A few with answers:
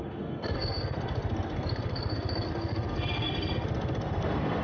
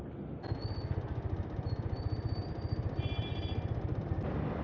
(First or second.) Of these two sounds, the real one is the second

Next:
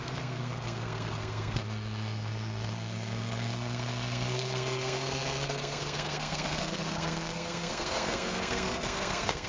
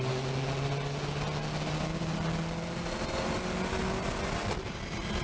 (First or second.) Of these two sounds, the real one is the second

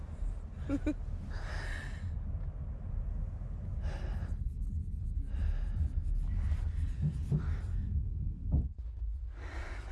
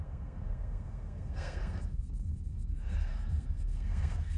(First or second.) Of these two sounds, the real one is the first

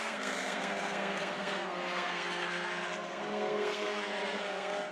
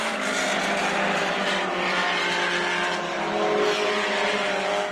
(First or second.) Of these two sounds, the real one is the second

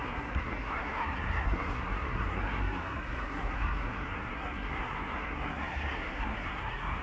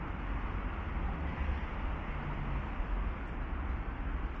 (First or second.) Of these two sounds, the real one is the second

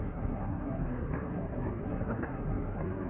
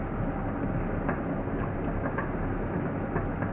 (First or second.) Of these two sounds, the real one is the second